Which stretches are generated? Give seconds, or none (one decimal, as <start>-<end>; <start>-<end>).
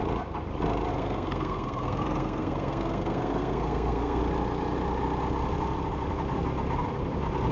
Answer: 0.9-4.2